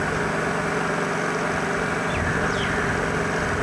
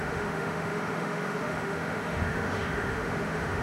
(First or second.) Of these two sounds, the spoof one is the second